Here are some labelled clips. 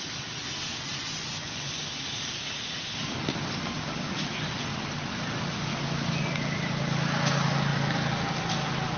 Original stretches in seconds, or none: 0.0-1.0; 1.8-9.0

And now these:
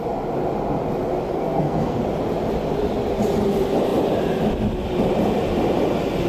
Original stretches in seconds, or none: 0.0-1.3; 2.0-6.3

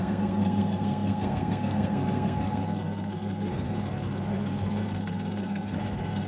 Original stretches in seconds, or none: none

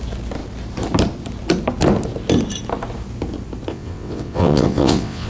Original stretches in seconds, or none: 0.0-3.7